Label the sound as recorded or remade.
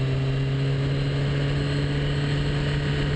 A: recorded